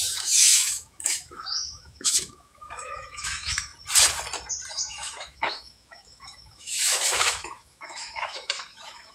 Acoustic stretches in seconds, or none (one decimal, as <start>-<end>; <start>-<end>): 3.7-4.7

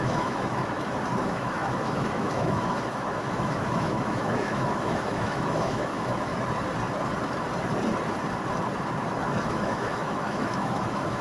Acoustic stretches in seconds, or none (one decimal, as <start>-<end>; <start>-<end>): 0.6-1.2; 6.3-9.5

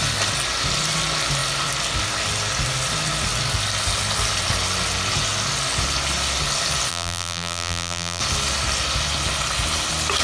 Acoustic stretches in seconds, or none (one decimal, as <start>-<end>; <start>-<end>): 0.0-6.9; 8.2-10.2

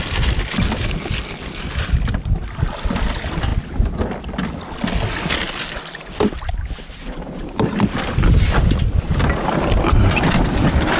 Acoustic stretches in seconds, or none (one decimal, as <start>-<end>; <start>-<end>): 0.0-11.0